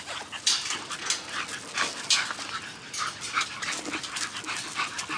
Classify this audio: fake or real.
real